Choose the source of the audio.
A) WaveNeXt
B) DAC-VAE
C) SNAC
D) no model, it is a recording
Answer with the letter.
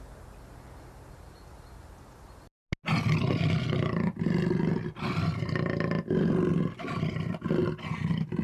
D